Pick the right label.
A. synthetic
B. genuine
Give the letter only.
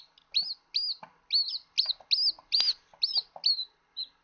B